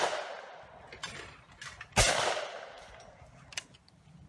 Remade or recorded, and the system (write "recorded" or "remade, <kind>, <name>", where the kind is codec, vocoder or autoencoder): recorded